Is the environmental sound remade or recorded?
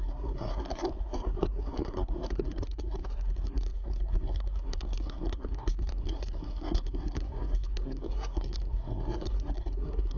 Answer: remade